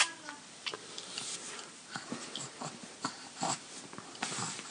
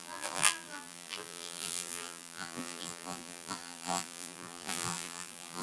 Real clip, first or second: first